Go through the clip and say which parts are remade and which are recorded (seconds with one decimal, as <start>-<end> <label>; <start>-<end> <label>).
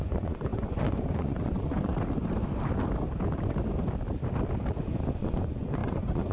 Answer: 0.0-1.9 remade; 1.9-5.2 recorded; 5.2-6.3 remade